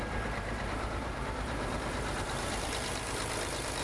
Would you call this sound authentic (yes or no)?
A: no